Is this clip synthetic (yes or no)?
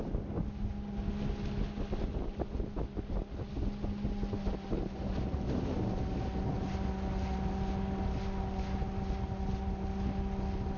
no